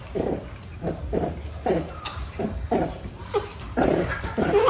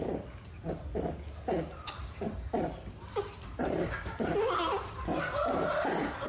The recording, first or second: second